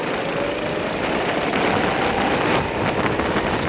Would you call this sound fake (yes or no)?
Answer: no